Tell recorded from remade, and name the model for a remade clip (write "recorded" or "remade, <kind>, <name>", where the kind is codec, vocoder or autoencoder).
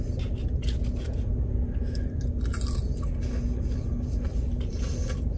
recorded